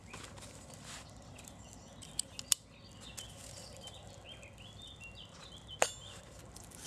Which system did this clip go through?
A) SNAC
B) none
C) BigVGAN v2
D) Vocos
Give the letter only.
B